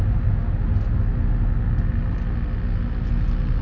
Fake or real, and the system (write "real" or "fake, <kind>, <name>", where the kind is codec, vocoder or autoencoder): real